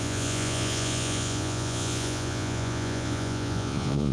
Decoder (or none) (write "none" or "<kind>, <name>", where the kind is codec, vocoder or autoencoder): vocoder, Vocos